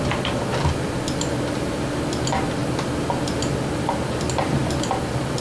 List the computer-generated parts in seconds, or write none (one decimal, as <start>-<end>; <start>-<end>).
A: none